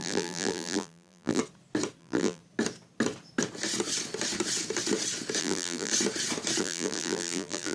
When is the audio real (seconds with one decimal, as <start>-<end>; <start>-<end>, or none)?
1.4-2.0; 2.4-5.4; 5.9-6.6